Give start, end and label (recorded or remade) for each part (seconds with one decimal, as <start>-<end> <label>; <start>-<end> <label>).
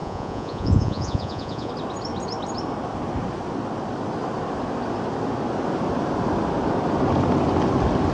0.0-1.7 remade; 1.7-8.1 recorded